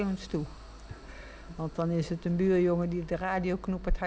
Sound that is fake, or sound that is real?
real